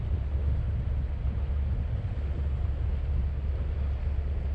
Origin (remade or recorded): recorded